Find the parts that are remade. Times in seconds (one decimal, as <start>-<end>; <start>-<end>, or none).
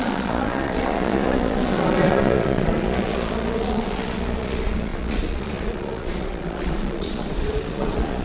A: 0.0-8.2